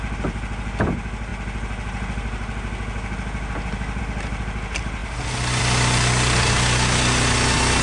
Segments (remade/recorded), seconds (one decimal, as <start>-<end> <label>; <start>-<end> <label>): 0.0-7.8 recorded